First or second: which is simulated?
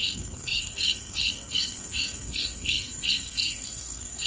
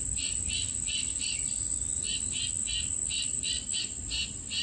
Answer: first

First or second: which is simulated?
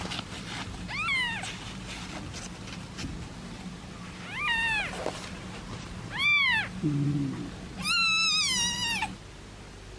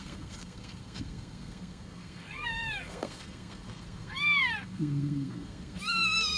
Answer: second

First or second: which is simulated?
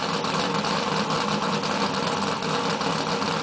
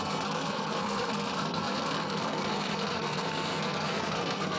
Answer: second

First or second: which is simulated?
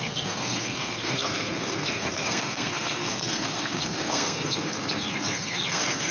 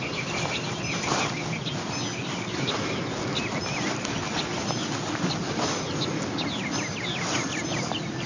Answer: first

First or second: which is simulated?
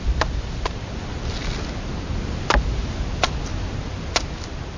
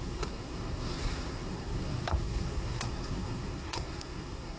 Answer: second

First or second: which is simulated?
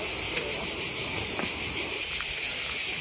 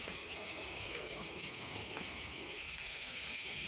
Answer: second